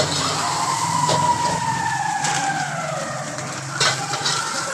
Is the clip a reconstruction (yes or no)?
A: yes